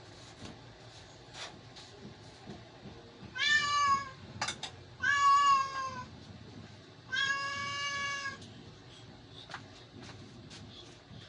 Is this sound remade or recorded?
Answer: recorded